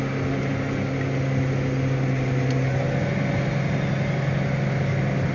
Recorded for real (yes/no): yes